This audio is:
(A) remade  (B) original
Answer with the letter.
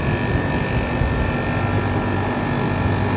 B